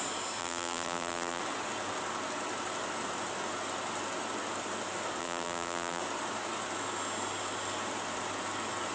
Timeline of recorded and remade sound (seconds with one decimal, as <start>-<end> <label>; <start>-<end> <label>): 0.0-0.4 recorded; 0.4-1.4 remade; 1.4-5.2 recorded; 5.2-6.0 remade; 6.0-8.9 recorded